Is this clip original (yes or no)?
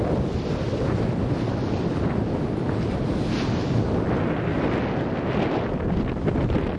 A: yes